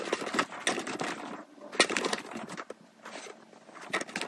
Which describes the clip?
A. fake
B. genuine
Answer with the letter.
B